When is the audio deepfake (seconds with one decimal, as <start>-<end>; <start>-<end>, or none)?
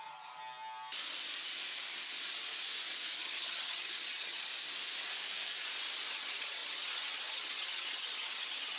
0.0-0.4; 3.2-4.5; 6.1-8.8